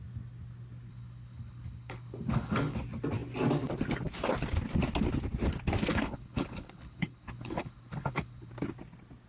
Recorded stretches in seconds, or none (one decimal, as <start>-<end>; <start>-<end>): 0.0-0.9; 2.8-5.9; 8.5-9.3